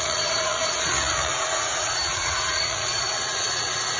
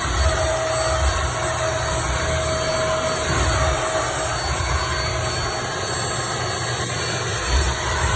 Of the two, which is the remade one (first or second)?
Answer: first